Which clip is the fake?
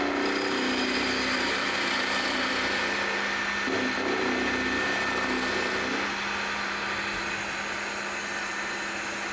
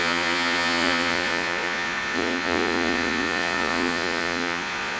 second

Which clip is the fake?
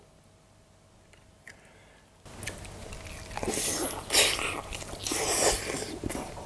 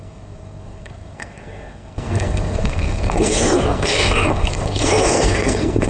second